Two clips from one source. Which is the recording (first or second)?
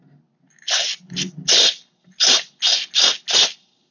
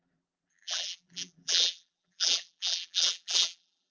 first